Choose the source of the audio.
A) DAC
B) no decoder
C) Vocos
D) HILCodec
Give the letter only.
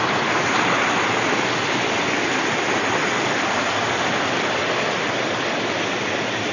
B